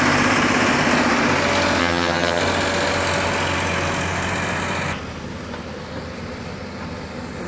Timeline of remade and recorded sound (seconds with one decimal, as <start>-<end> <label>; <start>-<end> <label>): 0.0-1.8 recorded; 1.8-2.4 remade; 2.4-7.5 recorded